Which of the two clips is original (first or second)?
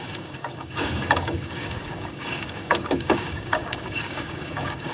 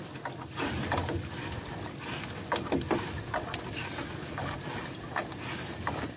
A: second